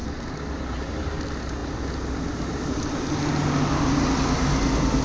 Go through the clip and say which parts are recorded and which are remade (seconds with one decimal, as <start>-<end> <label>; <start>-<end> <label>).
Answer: 0.0-1.1 remade; 1.1-5.0 recorded